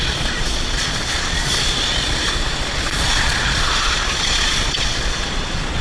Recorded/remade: remade